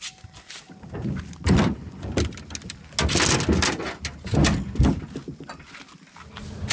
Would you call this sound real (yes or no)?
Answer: yes